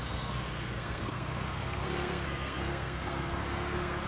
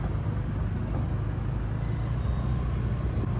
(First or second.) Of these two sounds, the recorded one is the second